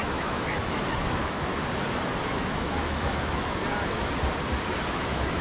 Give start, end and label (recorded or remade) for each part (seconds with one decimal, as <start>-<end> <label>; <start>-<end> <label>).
0.0-1.5 remade; 1.5-2.3 recorded; 2.3-3.6 remade; 3.6-4.9 recorded; 4.9-5.4 remade